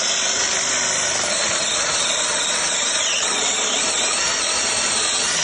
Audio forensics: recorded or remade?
recorded